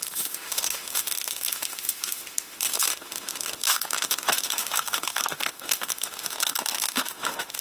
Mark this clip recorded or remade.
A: remade